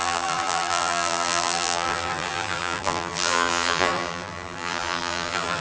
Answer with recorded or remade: remade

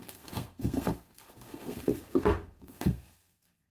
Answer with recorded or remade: remade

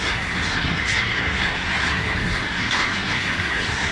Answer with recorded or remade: remade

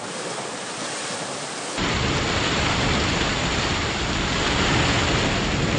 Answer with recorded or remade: recorded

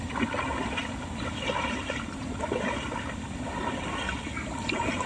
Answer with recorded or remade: recorded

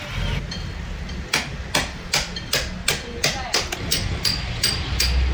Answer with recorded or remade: recorded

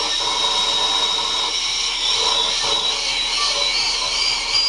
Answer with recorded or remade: recorded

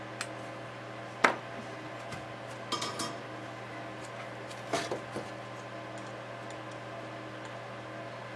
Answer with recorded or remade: recorded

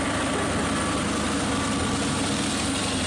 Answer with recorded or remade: recorded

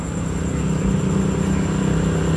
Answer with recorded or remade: recorded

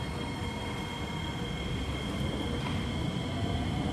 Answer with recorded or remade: recorded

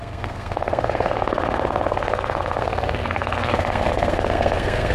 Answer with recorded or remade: remade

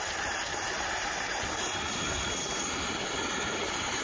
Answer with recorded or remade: recorded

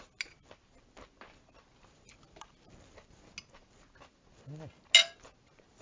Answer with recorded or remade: recorded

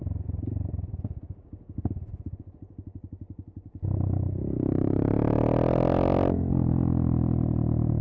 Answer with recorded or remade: recorded